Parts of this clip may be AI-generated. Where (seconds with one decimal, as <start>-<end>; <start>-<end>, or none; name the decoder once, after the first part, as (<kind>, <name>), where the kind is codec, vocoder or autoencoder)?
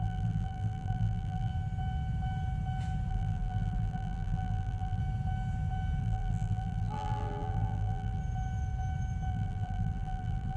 0.0-1.5 (vocoder, BigVGAN v2); 3.1-5.0; 6.0-8.2; 9.3-10.6